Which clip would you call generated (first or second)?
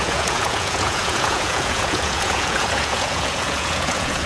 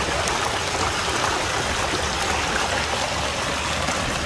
first